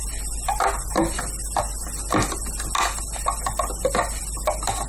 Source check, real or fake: real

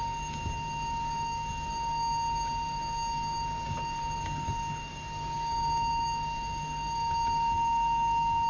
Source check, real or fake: fake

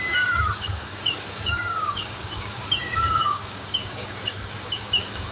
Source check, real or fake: fake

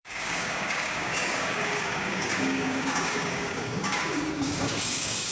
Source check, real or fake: fake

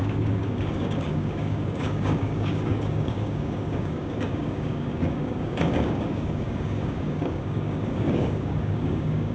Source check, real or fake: fake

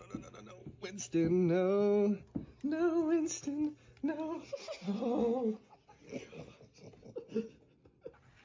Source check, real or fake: real